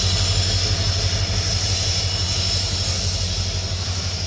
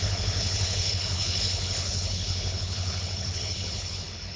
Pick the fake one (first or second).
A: second